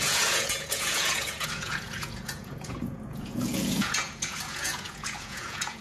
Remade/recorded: remade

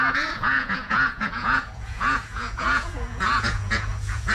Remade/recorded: remade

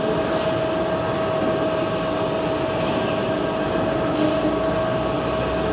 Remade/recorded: recorded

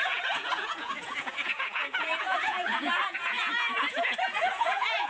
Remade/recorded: remade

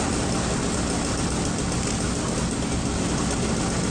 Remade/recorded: recorded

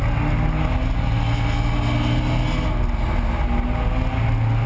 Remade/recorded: recorded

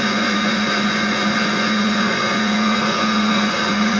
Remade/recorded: remade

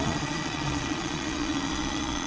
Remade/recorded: remade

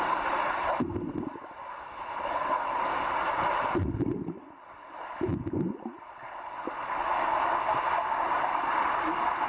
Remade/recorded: recorded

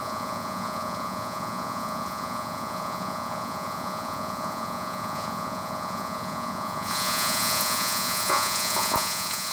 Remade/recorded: remade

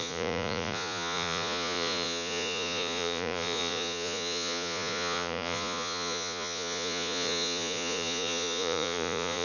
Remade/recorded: remade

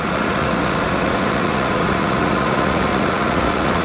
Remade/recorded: remade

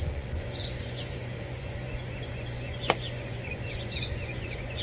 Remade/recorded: remade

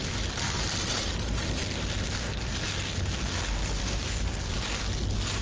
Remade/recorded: recorded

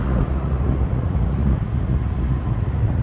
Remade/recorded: remade